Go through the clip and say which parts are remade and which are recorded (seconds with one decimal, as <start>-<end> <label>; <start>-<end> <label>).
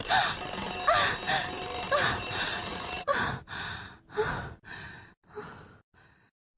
0.0-2.5 recorded; 2.5-3.3 remade; 3.3-6.6 recorded